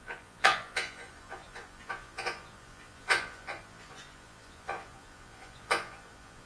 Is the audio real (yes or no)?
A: no